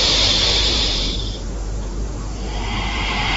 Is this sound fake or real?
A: fake